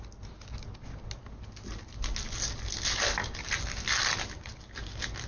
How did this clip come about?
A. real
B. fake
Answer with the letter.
A